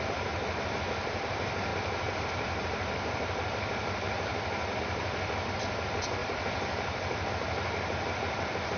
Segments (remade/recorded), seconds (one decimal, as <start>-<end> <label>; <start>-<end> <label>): 0.0-8.8 remade